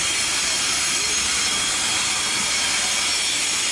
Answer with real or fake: real